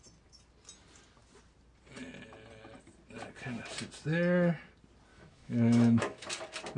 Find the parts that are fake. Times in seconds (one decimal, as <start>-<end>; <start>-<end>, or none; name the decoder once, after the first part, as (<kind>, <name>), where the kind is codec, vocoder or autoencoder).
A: 5.1-6.3 (autoencoder, DAC-VAE)